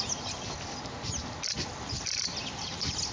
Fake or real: real